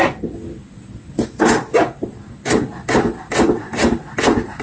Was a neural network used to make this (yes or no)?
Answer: no